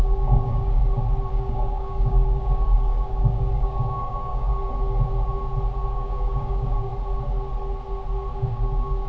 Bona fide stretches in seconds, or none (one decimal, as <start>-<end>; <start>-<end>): 0.8-1.3; 4.5-5.9; 6.9-8.3